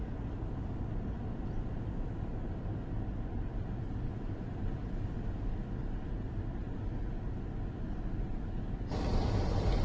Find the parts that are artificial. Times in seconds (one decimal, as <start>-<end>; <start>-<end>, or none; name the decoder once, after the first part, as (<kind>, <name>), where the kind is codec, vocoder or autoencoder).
none